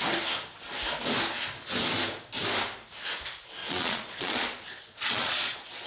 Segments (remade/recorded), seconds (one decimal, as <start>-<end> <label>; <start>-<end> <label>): 0.0-3.6 recorded; 3.6-5.9 remade